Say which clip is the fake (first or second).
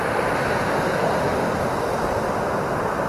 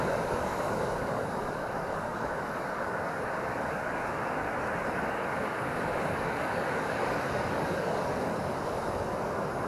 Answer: second